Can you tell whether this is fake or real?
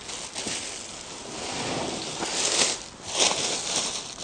real